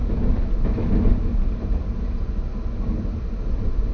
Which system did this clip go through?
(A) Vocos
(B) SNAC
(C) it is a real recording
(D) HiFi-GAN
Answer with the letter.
C